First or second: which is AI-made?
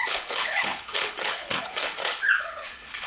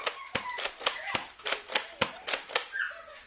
first